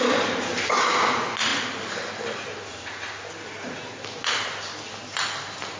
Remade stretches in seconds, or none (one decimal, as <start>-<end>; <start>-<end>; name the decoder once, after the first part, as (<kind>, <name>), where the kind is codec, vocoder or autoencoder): none